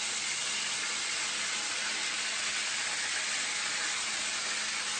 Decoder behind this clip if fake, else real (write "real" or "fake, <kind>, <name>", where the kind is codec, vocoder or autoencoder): real